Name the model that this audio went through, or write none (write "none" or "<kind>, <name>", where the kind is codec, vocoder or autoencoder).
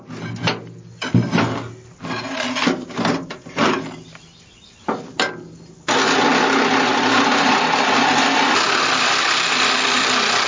none